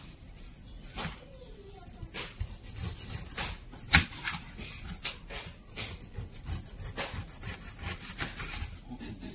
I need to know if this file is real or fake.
real